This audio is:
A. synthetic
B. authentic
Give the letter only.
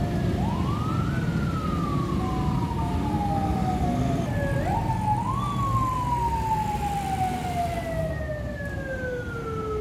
A